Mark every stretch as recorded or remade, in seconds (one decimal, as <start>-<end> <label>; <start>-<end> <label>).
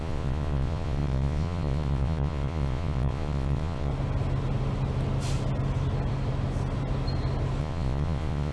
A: 0.0-3.9 remade; 3.9-7.6 recorded; 7.6-8.5 remade